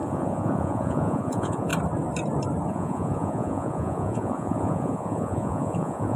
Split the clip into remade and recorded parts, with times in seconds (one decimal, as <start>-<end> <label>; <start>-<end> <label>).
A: 0.0-1.7 remade; 1.7-2.7 recorded; 2.7-6.2 remade